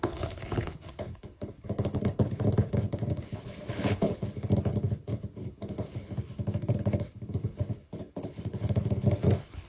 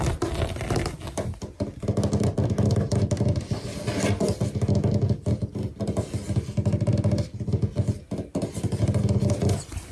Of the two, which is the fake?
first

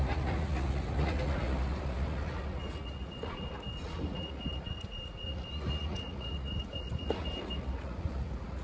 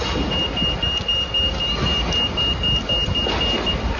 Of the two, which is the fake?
first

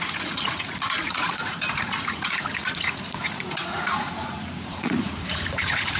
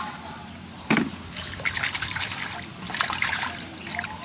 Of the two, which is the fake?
first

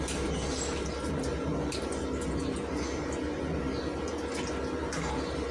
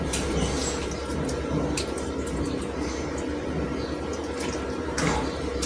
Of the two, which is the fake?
second